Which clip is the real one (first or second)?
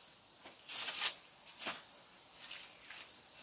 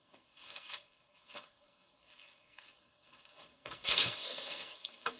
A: first